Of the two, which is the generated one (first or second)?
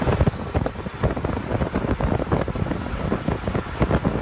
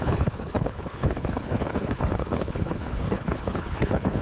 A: second